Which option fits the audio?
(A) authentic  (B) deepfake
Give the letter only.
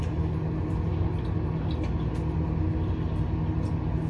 A